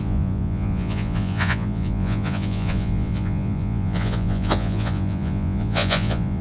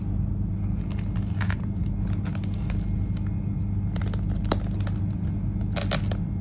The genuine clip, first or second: second